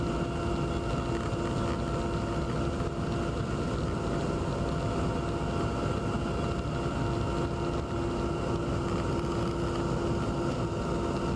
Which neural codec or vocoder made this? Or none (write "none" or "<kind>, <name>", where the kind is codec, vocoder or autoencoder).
none